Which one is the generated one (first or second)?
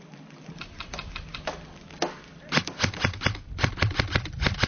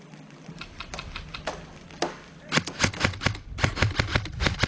first